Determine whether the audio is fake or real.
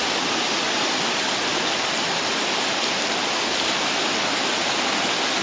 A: real